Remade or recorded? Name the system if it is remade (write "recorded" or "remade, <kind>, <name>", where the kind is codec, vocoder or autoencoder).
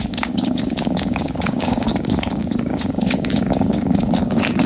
remade, codec, DAC